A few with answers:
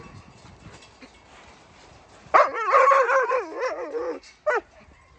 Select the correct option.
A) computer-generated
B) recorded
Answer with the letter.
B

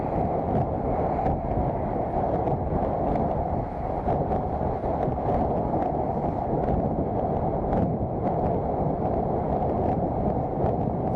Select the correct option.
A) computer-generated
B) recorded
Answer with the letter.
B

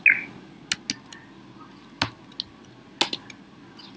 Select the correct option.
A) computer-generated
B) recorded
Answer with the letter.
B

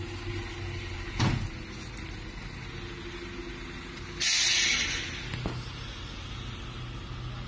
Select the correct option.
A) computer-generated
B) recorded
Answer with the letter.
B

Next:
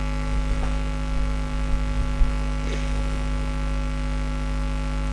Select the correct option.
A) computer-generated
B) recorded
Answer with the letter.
B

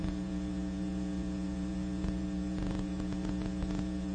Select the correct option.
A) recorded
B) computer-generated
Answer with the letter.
B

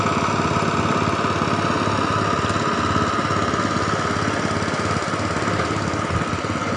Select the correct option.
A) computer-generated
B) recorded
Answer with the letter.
B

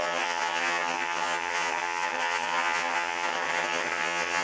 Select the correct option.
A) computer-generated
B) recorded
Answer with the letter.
A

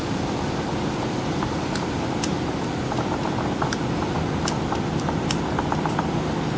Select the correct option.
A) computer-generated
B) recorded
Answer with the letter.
B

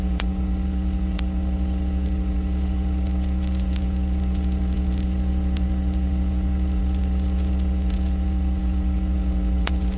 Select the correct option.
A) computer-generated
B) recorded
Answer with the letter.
A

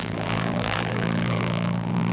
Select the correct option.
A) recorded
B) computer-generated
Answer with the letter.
B